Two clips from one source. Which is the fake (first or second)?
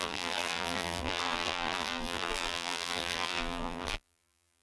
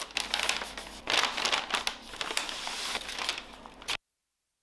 first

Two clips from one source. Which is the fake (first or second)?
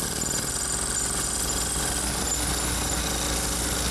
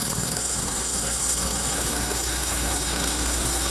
second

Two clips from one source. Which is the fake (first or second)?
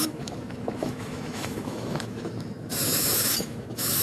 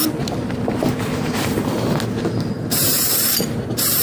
first